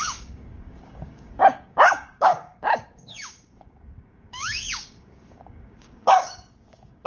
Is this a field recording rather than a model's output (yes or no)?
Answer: no